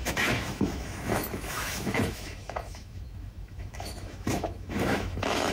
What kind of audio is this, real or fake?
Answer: fake